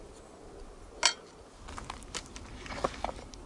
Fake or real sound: real